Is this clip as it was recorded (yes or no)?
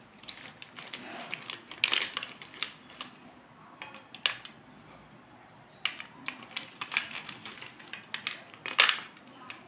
yes